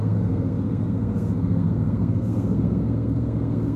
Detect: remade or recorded remade